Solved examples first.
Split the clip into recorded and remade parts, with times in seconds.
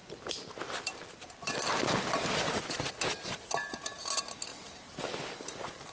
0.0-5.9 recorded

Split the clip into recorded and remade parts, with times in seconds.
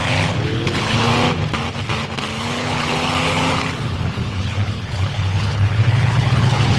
0.0-1.1 remade; 1.1-2.4 recorded; 2.4-6.8 remade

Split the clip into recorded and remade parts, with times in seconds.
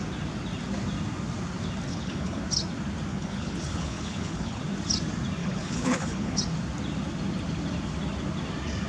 0.0-1.9 recorded; 1.9-2.4 remade; 2.4-3.1 recorded; 3.1-4.6 remade; 4.6-5.4 recorded; 5.4-6.4 remade; 6.4-8.9 recorded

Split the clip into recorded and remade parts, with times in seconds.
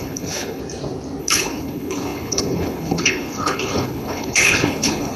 0.0-0.6 remade; 0.6-1.2 recorded; 1.2-5.2 remade